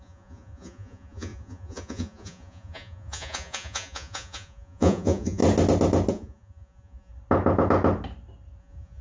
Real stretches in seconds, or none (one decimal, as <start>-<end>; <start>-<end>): 5.4-6.1; 7.1-8.6